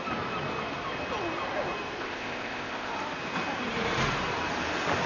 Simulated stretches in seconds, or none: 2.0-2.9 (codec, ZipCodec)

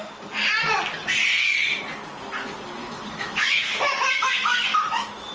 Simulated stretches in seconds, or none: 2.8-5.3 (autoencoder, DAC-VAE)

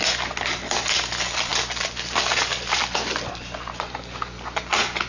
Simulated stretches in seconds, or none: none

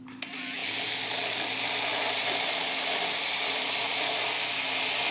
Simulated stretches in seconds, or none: none

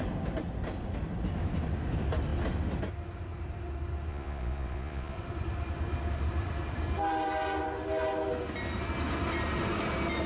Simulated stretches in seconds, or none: 4.1-5.2 (vocoder, Vocos)

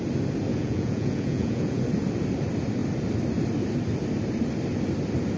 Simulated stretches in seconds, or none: 0.5-1.8 (vocoder, Vocos)

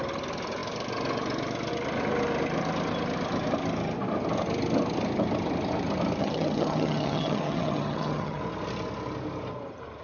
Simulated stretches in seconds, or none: 6.2-8.4 (vocoder, HiFi-GAN)

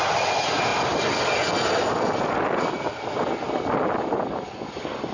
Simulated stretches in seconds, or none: none